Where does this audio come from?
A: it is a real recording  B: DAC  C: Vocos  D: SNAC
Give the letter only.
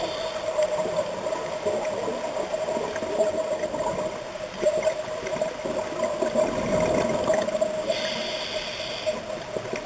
A